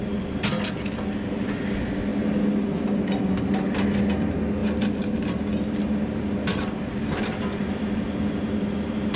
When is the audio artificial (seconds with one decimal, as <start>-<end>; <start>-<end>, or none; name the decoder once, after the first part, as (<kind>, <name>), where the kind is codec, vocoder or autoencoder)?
none